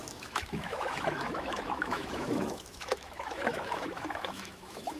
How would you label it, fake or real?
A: fake